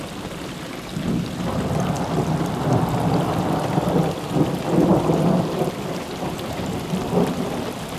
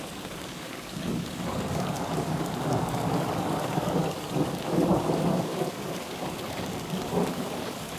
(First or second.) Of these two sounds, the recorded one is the first